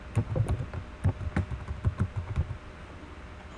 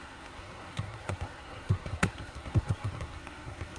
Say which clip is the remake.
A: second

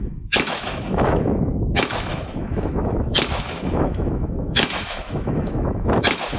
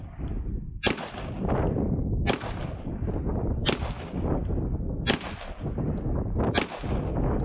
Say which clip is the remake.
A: first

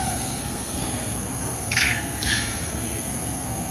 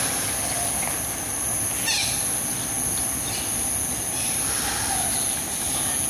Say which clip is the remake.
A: first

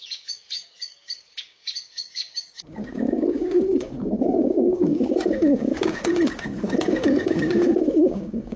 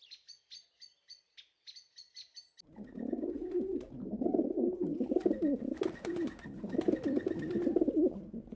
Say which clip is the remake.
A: first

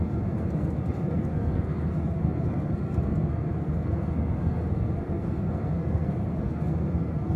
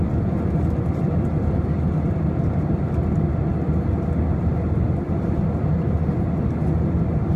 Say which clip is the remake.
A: first